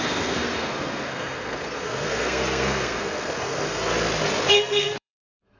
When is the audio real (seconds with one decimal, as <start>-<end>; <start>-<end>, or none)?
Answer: 3.9-4.5